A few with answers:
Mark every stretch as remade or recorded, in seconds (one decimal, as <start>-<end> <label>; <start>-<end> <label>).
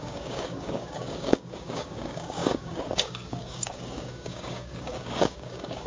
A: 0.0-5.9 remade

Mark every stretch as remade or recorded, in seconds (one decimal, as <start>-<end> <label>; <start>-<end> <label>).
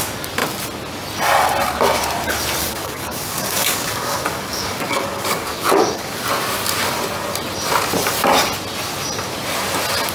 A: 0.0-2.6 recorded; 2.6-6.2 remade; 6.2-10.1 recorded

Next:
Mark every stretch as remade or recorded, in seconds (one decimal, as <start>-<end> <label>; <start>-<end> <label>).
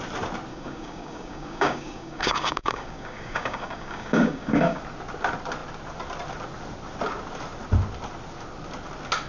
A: 0.0-0.5 recorded; 0.5-4.8 remade; 4.8-9.3 recorded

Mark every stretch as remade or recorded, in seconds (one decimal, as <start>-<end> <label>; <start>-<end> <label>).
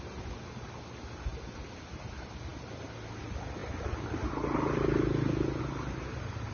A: 0.0-6.5 recorded